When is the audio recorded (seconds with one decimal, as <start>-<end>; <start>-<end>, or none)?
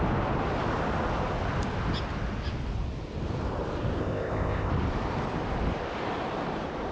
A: 0.0-4.0; 4.7-6.9